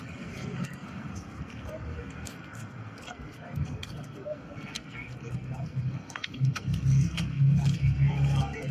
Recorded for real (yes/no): no